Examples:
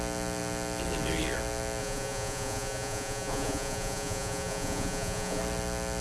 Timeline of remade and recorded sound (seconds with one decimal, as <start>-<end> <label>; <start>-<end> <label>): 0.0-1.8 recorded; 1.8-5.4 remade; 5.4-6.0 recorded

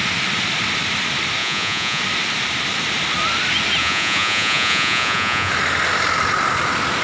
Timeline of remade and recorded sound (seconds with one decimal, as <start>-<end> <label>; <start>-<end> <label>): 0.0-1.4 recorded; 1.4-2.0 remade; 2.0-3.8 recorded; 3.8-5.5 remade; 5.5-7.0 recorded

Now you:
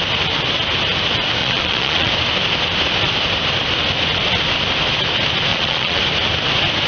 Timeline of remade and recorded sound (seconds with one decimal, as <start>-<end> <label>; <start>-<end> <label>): 0.0-1.4 recorded; 1.4-2.1 remade; 2.1-5.5 recorded; 5.5-6.0 remade; 6.0-6.9 recorded

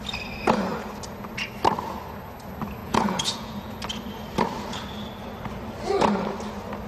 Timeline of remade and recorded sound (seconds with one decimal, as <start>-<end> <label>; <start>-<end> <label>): 0.0-2.8 recorded; 2.8-3.7 remade; 3.7-6.9 recorded

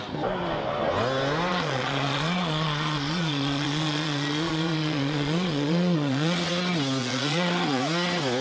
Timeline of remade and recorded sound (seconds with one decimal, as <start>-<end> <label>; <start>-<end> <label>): 0.0-1.5 recorded; 1.5-6.5 remade; 6.5-7.0 recorded; 7.0-7.8 remade; 7.8-8.4 recorded